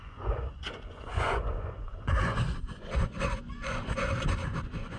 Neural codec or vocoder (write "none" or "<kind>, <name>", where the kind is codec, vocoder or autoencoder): vocoder, Vocos